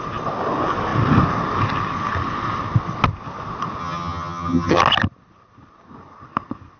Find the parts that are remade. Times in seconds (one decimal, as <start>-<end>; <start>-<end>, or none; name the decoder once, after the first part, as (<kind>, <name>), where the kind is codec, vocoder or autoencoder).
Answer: 3.8-4.8 (vocoder, HiFi-GAN)